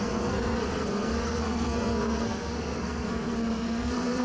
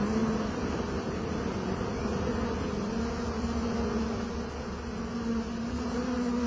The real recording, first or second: second